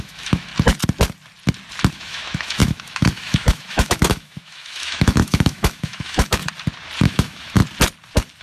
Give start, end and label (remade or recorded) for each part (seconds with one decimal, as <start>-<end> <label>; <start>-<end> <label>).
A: 0.0-0.5 remade; 0.5-1.9 recorded; 1.9-6.4 remade; 6.4-7.0 recorded; 7.0-7.6 remade; 7.6-8.4 recorded